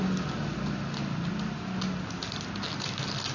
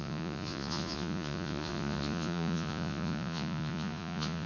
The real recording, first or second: first